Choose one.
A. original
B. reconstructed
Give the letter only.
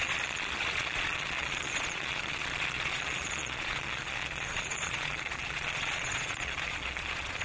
B